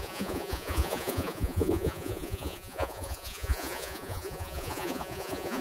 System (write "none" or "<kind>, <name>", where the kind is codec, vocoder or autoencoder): vocoder, Vocos